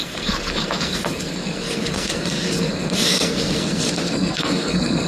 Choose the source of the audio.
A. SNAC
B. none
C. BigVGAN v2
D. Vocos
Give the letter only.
A